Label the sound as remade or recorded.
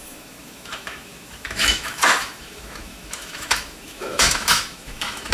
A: remade